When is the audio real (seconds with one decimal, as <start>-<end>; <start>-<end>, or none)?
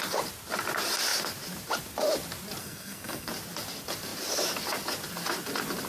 0.0-2.6; 3.3-5.9